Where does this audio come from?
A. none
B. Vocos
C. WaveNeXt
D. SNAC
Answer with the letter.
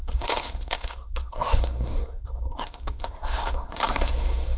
D